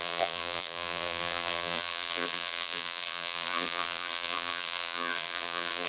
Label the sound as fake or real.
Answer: fake